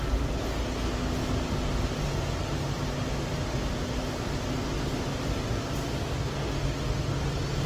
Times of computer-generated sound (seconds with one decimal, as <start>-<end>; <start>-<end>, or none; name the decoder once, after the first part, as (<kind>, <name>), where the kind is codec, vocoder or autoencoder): 6.0-6.5 (codec, SNAC)

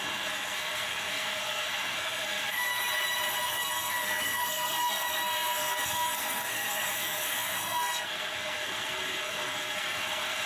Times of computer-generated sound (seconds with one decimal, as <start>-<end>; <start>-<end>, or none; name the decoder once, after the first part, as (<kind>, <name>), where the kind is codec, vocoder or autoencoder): 0.0-2.8 (codec, SNAC); 3.4-10.5

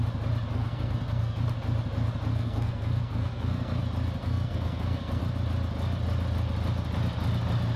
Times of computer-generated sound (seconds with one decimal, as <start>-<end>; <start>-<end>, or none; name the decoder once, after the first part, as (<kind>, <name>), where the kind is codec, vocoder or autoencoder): 0.5-1.4 (codec, SNAC); 2.3-3.8; 4.2-5.2

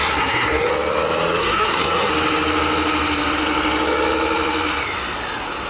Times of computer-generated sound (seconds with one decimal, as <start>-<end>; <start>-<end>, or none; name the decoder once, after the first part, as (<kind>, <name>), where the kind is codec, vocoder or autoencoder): 0.0-0.7 (codec, SNAC); 1.4-2.1

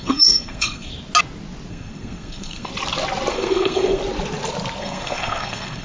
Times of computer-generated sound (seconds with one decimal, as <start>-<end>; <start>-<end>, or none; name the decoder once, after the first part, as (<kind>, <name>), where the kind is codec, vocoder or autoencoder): 0.0-0.9 (codec, SNAC); 1.7-2.7; 3.3-4.0; 4.8-5.8